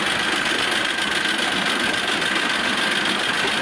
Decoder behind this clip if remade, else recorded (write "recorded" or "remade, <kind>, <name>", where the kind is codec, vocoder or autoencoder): recorded